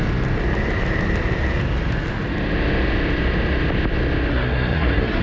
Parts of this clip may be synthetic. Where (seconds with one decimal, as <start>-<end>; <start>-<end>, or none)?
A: 4.3-5.2